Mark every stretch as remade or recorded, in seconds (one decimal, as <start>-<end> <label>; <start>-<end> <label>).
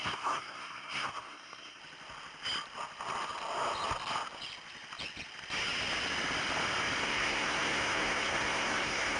0.0-1.8 remade; 1.8-7.0 recorded; 7.0-9.2 remade